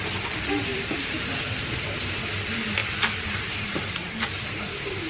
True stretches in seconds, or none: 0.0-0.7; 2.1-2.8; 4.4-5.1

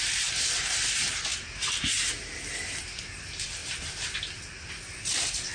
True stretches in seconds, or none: 0.0-5.5